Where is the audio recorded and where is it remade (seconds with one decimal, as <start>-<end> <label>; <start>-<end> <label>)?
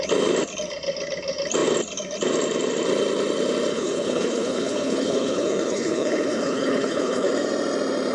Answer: 0.0-3.7 recorded; 3.7-7.3 remade; 7.3-8.1 recorded